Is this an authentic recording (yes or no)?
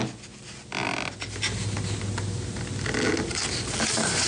yes